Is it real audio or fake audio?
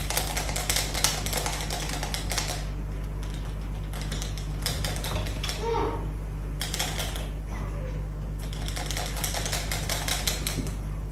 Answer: real